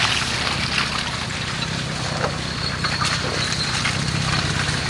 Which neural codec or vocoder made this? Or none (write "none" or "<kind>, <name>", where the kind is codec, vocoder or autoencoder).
none